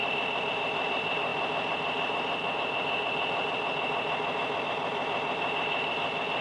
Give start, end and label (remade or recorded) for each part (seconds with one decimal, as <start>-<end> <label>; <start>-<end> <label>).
0.0-6.4 recorded